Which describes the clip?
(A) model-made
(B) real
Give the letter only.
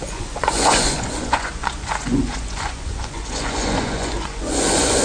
A